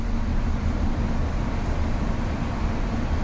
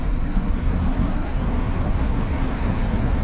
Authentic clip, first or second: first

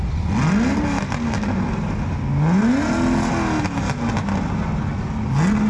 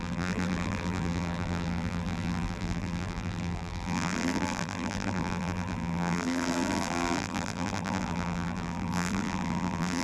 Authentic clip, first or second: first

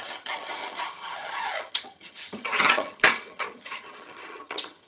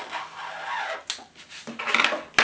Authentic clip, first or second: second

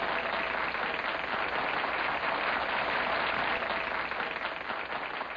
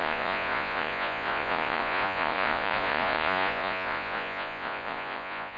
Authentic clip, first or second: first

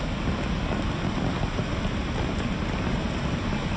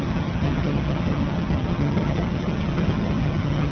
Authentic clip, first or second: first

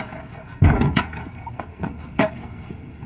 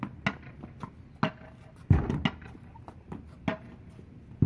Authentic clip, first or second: second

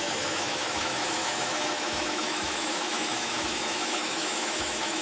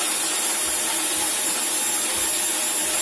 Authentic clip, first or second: second